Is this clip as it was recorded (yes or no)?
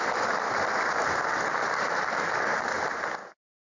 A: yes